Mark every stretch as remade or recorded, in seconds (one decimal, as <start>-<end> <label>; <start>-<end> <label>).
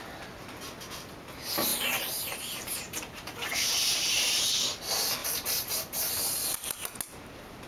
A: 0.0-1.7 recorded; 1.7-4.5 remade; 4.5-5.2 recorded; 5.2-6.1 remade; 6.1-7.7 recorded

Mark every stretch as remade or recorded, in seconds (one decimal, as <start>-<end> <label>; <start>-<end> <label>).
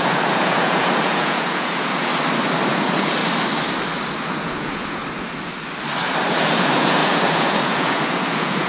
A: 0.0-2.1 remade; 2.1-2.7 recorded; 2.7-3.2 remade; 3.2-4.2 recorded; 4.2-5.0 remade; 5.0-6.3 recorded; 6.3-8.7 remade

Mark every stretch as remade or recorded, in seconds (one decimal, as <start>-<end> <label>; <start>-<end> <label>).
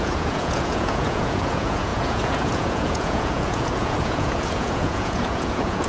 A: 0.0-5.9 remade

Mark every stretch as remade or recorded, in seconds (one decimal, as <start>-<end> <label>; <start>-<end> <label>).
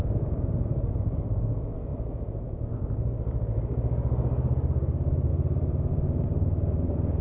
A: 0.0-1.9 remade; 1.9-2.5 recorded; 2.5-5.3 remade; 5.3-5.9 recorded; 5.9-7.2 remade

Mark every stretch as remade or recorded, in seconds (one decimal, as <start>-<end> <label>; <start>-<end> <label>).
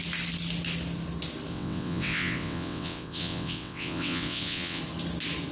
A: 0.0-1.5 recorded; 1.5-4.8 remade; 4.8-5.5 recorded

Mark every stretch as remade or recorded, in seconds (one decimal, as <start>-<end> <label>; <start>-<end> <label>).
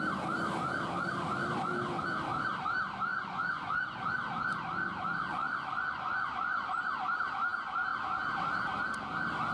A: 0.0-3.1 recorded; 3.1-4.1 remade; 4.1-5.3 recorded; 5.3-6.7 remade; 6.7-9.5 recorded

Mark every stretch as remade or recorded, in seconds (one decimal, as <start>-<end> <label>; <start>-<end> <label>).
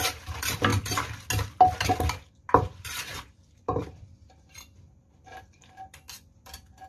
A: 0.0-0.7 remade; 0.7-2.3 recorded; 2.3-6.9 remade